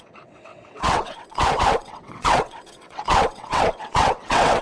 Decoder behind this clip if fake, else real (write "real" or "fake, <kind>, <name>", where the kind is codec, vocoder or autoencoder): fake, vocoder, WaveNeXt